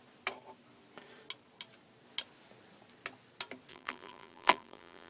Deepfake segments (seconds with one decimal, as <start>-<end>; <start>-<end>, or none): 3.7-5.1